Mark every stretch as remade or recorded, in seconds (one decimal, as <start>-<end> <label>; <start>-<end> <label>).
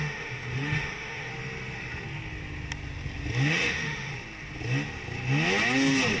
0.0-1.3 remade; 1.3-3.5 recorded; 3.5-4.1 remade; 4.1-6.2 recorded